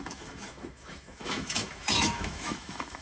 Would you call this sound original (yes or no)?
no